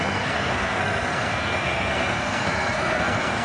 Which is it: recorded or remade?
remade